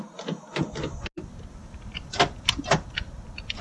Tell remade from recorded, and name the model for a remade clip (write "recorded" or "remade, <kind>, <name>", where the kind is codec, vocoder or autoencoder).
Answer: recorded